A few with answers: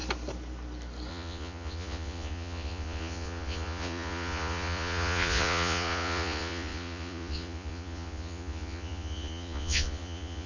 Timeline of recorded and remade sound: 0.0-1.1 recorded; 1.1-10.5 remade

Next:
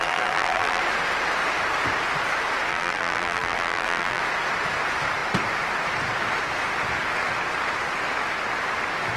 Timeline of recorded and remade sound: 0.0-0.8 remade; 0.8-2.7 recorded; 2.7-4.2 remade; 4.2-9.2 recorded

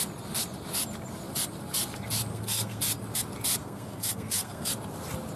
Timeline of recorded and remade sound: 0.0-2.3 recorded; 2.3-2.8 remade; 2.8-3.6 recorded; 3.6-4.7 remade; 4.7-5.4 recorded

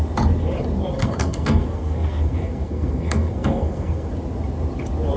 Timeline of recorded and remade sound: 0.0-1.0 recorded; 1.0-4.1 remade; 4.1-5.2 recorded

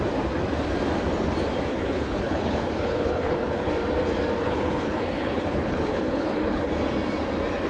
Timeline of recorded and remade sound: 0.0-1.7 recorded; 1.7-3.7 remade; 3.7-4.4 recorded; 4.4-6.7 remade; 6.7-7.7 recorded

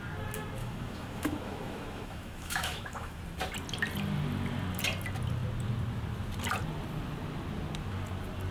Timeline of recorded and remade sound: 0.0-0.6 recorded; 0.6-3.2 remade; 3.2-8.5 recorded

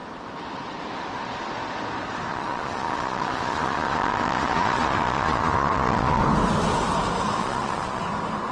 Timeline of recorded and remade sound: 0.0-2.3 recorded; 2.3-6.2 remade; 6.2-7.4 recorded; 7.4-8.0 remade; 8.0-8.5 recorded